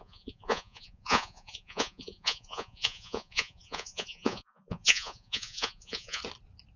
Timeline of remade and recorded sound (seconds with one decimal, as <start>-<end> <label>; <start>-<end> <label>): 0.0-6.2 remade; 6.2-6.8 recorded